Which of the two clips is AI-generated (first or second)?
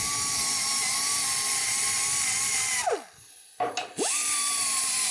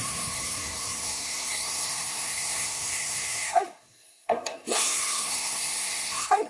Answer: second